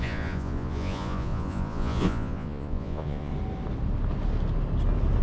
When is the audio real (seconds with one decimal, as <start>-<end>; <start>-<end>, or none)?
3.3-5.2